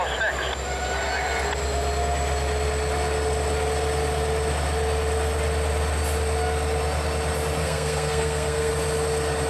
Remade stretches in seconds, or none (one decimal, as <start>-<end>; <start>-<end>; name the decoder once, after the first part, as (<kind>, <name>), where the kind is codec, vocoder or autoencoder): 7.6-8.7 (codec, SNAC)